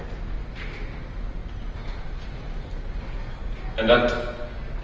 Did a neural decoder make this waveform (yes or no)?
no